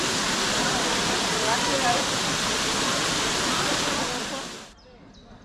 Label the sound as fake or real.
real